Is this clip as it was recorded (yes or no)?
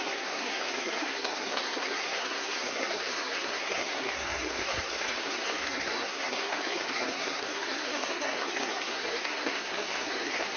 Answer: no